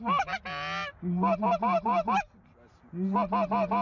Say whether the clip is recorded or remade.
recorded